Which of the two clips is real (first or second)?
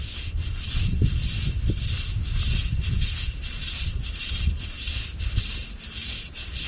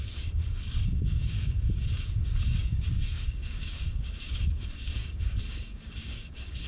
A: first